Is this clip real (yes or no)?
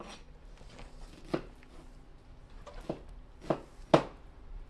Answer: yes